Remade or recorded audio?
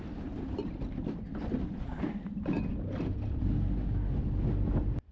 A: recorded